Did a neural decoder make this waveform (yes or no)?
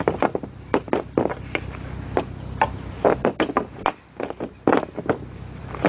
no